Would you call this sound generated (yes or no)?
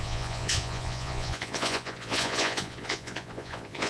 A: yes